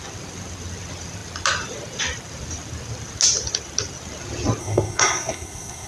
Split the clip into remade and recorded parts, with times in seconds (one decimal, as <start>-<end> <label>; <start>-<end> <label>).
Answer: 0.0-4.6 recorded; 4.6-5.9 remade